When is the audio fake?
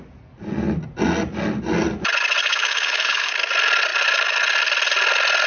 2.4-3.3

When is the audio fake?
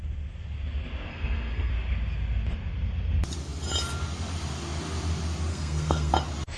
1.1-1.7; 5.5-6.1